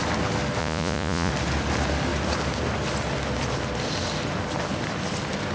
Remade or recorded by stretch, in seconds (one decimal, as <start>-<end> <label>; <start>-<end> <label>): 0.0-0.6 recorded; 0.6-1.3 remade; 1.3-5.5 recorded